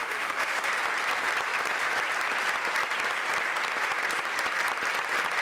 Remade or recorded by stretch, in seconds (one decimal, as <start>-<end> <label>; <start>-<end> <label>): 0.0-0.7 remade; 0.7-5.4 recorded